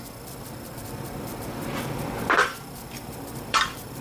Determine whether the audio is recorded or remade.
remade